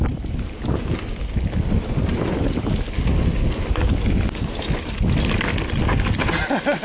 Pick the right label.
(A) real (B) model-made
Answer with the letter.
A